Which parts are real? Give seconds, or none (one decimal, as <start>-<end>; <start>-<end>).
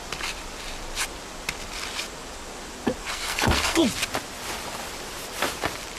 0.0-3.0; 3.8-6.0